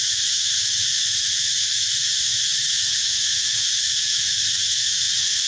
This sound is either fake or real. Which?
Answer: fake